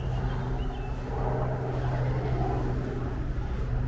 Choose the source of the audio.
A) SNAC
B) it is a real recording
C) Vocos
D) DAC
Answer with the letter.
B